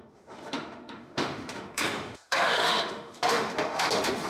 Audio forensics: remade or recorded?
remade